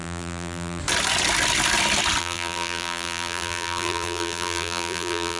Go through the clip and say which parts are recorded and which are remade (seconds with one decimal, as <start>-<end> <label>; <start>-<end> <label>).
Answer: 0.0-0.8 remade; 0.8-2.2 recorded; 2.2-5.4 remade